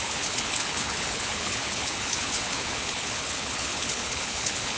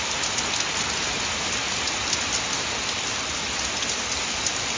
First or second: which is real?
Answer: second